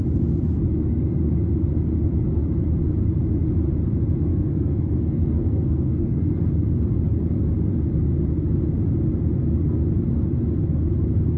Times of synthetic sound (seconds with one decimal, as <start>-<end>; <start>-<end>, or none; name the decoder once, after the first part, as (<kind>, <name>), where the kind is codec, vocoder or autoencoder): 4.3-6.8 (codec, SNAC)